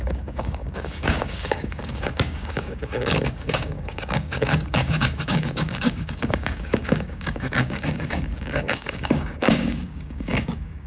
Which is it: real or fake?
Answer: fake